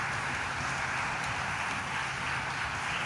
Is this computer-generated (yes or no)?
no